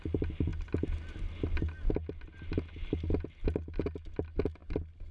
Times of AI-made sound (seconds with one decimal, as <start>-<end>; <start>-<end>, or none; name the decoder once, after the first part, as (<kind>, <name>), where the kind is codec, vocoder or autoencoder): none